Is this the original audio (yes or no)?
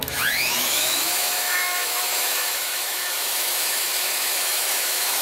no